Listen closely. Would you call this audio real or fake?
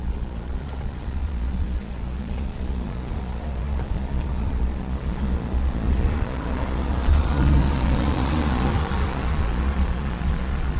fake